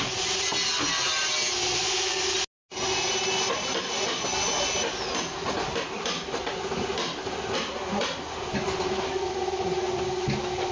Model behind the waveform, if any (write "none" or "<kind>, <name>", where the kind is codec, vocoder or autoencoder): none